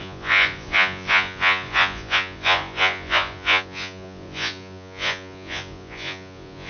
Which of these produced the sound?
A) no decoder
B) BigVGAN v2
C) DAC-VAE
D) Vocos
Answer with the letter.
D